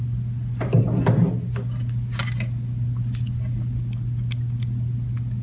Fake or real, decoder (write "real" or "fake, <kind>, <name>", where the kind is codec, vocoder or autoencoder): real